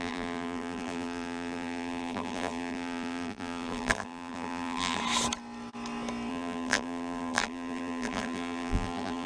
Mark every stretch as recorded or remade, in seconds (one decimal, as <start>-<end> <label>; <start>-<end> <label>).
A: 0.0-5.0 remade; 5.0-6.3 recorded; 6.3-9.3 remade